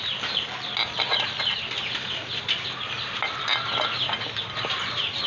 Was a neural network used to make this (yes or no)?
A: no